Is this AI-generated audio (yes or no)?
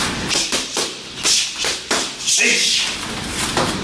no